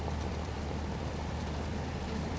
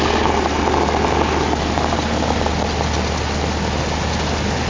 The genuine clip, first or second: second